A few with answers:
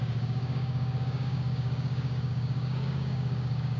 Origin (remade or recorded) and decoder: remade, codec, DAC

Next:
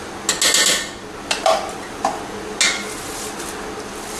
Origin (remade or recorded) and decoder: recorded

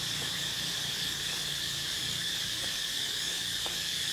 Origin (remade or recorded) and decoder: remade, codec, DAC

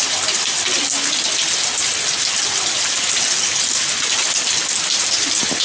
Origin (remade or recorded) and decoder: recorded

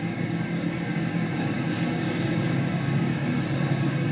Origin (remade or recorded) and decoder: remade, codec, DAC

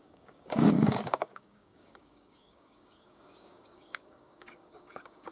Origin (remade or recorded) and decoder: remade, codec, DAC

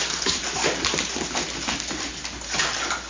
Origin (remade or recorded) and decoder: recorded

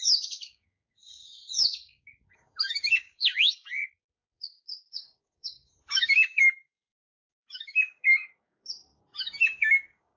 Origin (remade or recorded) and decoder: remade, codec, DAC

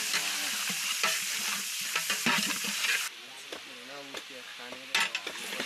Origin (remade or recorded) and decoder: recorded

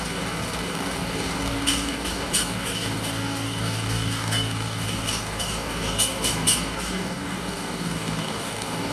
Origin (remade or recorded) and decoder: remade, codec, DAC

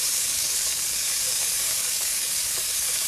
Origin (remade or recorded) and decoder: remade, codec, DAC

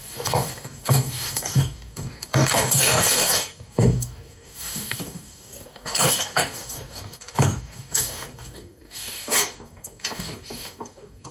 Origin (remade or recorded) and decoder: remade, codec, DAC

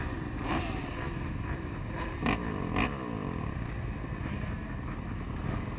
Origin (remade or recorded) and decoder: recorded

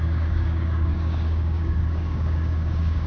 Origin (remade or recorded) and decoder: remade, codec, DAC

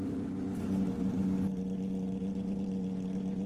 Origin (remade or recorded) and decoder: recorded